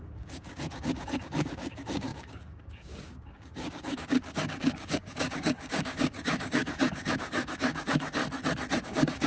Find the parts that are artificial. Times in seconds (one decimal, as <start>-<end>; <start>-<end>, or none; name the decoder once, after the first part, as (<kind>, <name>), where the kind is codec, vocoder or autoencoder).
0.0-8.2 (codec, DAC); 8.8-9.3